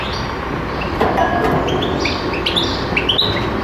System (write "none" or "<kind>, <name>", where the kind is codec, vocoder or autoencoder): none